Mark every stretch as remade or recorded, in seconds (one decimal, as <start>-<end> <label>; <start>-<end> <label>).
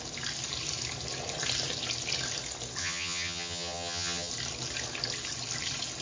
0.0-2.8 recorded; 2.8-4.3 remade; 4.3-6.0 recorded